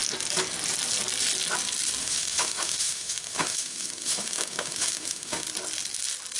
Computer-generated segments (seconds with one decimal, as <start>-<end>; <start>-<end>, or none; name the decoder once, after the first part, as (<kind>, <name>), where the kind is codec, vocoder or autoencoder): 2.0-5.5 (autoencoder, DAC-VAE)